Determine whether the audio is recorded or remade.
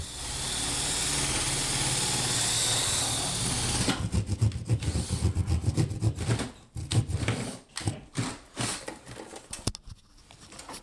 recorded